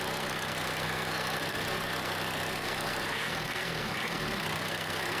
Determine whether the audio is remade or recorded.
remade